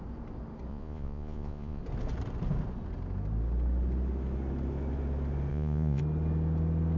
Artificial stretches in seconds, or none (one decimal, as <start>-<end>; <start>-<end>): 0.7-1.8; 5.5-6.0